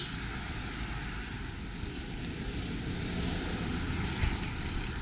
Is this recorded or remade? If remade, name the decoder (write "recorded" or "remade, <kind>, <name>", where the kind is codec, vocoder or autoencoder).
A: recorded